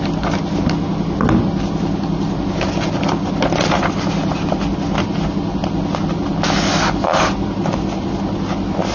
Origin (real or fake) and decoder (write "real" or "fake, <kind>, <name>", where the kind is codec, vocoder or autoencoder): real